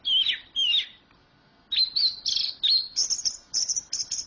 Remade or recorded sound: recorded